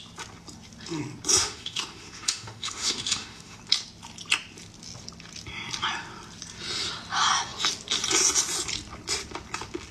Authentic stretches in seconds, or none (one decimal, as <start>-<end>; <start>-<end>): 0.0-1.4; 3.6-9.9